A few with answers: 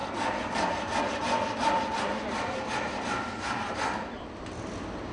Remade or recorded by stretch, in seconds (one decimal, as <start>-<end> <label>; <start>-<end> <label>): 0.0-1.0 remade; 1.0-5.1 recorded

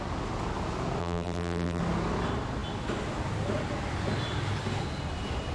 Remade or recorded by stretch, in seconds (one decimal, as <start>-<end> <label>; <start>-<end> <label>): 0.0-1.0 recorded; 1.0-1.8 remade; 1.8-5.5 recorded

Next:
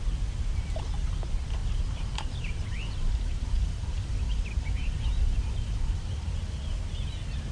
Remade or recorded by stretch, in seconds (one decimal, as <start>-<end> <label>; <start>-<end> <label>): 0.0-1.6 recorded; 1.6-6.1 remade; 6.1-7.5 recorded